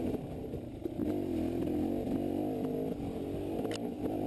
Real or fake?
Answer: real